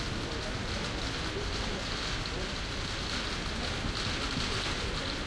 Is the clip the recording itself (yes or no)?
yes